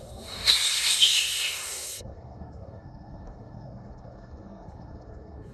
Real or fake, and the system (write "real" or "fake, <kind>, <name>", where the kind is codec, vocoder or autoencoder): fake, codec, SNAC